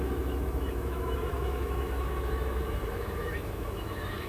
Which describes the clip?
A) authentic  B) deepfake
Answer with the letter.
B